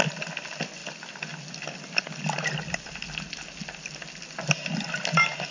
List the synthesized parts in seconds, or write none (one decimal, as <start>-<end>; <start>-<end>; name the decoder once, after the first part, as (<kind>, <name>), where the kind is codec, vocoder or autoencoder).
none